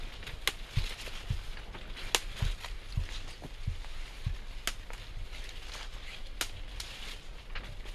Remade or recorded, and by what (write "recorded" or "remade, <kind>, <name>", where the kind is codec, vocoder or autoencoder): recorded